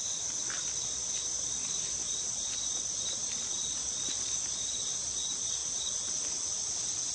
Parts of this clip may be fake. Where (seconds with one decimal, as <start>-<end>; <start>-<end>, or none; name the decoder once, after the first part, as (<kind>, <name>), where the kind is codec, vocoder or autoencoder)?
5.6-7.1 (vocoder, BigVGAN v2)